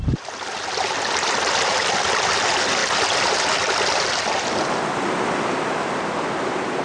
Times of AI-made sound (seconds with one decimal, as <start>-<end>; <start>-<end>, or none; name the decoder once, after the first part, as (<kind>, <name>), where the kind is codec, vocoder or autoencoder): none